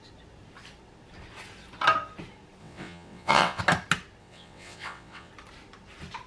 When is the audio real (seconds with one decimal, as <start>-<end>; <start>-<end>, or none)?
0.0-2.6; 3.6-4.2; 5.3-6.3